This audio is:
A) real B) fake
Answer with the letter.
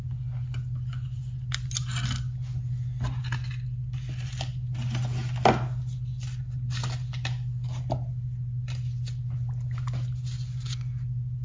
A